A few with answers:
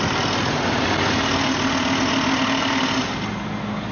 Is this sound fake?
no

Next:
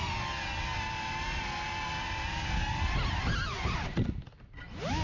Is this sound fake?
no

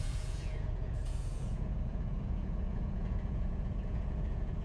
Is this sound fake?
yes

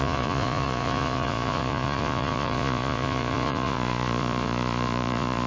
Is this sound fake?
yes